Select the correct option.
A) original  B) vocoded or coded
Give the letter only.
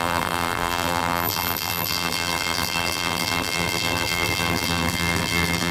B